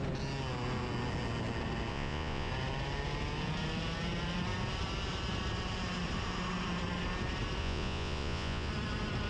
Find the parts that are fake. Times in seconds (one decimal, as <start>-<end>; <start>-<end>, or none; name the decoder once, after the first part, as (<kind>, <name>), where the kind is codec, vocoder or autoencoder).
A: 1.9-2.5 (vocoder, Vocos); 7.6-8.7